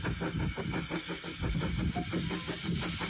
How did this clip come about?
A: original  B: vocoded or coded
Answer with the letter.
A